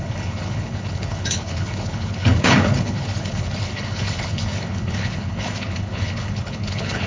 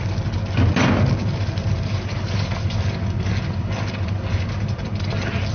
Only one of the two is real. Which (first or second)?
second